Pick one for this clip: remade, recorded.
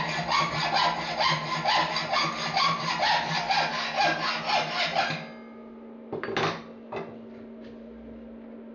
recorded